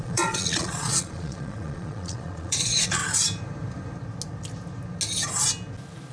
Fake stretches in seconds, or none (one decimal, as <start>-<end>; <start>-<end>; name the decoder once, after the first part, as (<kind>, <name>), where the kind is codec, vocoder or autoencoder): 0.0-3.0 (vocoder, Vocos)